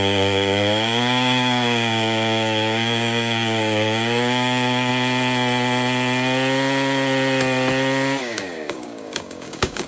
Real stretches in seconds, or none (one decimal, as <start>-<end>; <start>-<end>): 4.9-8.2